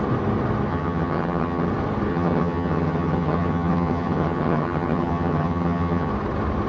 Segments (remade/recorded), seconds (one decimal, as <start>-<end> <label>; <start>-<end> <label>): 0.0-0.7 recorded; 0.7-1.7 remade; 1.7-2.1 recorded; 2.1-6.1 remade; 6.1-6.7 recorded